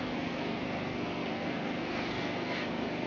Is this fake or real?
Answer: fake